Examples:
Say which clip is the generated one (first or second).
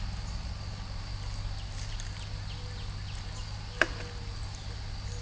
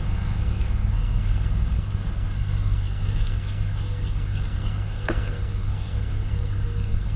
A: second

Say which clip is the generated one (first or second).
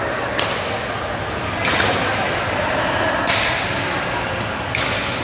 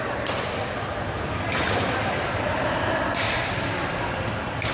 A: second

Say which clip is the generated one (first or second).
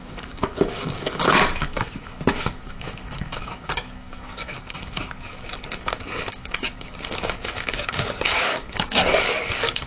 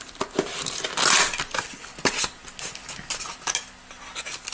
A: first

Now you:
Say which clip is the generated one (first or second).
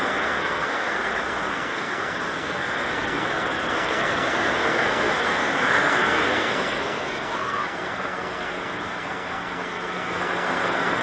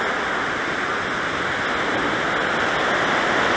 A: first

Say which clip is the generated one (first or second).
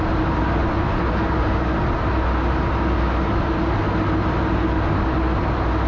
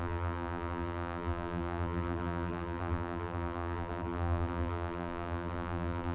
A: second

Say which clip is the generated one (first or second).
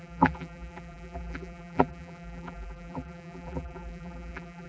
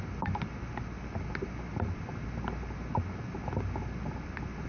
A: first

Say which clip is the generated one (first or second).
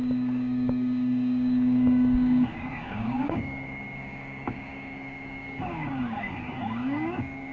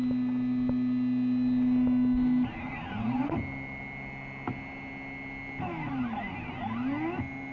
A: first